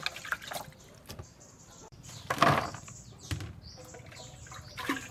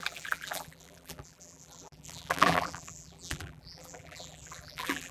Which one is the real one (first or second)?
first